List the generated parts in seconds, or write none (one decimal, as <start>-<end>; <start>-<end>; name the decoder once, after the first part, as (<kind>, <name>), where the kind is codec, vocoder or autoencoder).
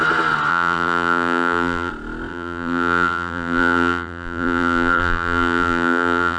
0.5-1.9 (vocoder, BigVGAN v2); 2.3-6.4